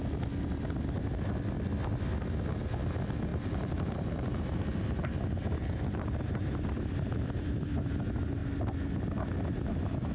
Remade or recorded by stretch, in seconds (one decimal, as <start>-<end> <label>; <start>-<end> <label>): 0.0-3.3 recorded; 3.3-8.0 remade; 8.0-10.1 recorded